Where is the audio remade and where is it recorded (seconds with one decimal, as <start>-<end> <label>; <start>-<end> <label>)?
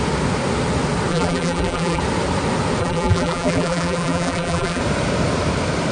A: 0.0-1.1 recorded; 1.1-2.0 remade; 2.0-2.8 recorded; 2.8-4.8 remade; 4.8-5.9 recorded